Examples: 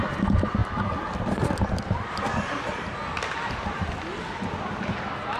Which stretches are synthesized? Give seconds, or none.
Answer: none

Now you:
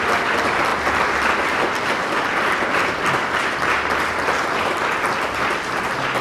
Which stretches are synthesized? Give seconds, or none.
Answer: none